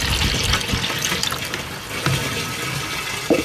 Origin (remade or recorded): recorded